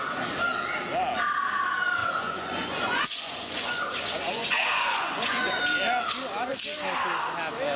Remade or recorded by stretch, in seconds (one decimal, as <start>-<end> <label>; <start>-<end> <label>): 0.0-2.0 recorded; 2.0-5.6 remade; 5.6-7.8 recorded